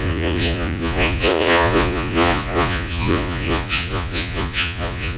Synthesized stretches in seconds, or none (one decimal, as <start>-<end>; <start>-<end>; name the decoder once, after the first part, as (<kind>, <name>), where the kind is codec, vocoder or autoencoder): 0.0-5.2 (vocoder, Vocos)